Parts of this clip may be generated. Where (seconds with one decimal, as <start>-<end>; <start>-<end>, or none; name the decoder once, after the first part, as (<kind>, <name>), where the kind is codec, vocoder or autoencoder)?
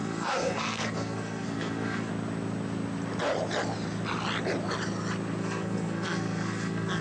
0.0-2.1 (codec, SNAC); 5.4-7.0